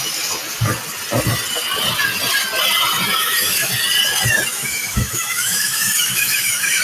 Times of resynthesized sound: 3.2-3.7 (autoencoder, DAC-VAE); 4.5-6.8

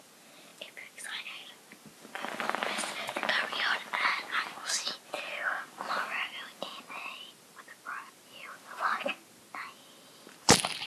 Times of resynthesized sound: none